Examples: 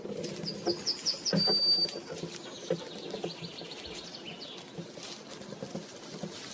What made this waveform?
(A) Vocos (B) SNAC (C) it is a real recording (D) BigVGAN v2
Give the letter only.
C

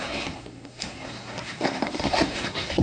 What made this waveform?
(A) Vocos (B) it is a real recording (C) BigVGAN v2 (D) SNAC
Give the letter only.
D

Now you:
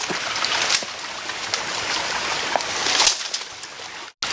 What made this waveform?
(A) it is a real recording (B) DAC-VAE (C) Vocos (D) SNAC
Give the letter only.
A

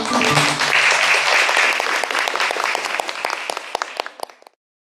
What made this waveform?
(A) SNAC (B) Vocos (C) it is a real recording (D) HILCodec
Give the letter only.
C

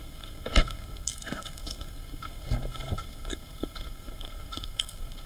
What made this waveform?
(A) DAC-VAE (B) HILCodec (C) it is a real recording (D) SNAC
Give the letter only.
D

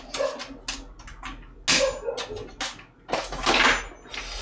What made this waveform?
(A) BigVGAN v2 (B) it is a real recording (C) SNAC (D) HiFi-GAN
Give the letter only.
B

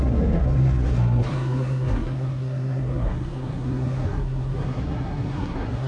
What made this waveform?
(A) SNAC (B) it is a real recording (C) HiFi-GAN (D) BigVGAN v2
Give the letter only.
A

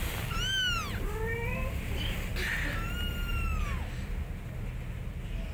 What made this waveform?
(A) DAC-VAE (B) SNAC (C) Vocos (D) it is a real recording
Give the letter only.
D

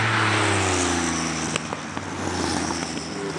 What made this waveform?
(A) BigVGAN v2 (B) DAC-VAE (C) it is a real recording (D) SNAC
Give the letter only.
C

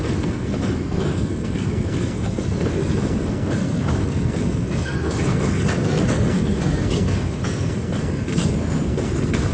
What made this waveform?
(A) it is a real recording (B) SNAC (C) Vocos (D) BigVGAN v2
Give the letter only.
B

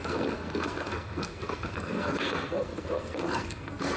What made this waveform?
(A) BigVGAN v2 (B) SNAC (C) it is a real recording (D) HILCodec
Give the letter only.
B